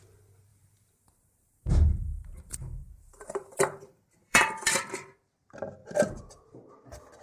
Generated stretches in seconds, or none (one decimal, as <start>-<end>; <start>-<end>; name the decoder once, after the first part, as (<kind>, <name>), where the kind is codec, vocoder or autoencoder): 0.5-4.8 (vocoder, BigVGAN v2); 5.8-6.7